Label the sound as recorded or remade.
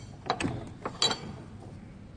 recorded